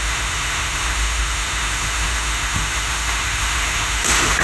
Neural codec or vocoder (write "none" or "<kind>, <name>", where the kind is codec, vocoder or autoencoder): autoencoder, DAC-VAE